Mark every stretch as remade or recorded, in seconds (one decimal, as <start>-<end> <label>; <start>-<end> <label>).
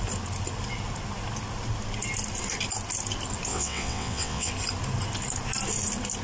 0.0-3.5 recorded; 3.5-4.5 remade; 4.5-6.2 recorded